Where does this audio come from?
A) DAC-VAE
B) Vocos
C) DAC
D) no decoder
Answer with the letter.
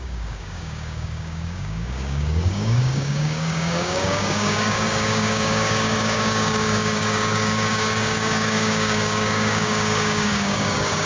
C